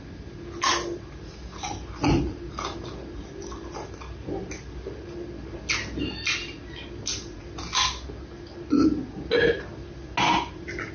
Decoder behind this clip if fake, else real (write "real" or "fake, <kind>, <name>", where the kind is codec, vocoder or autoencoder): real